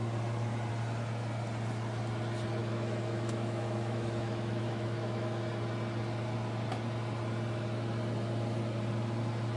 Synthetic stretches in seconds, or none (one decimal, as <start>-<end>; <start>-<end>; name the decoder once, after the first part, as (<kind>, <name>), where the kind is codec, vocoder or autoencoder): 2.6-5.4 (autoencoder, DAC-VAE)